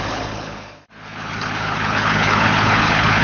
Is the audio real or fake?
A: fake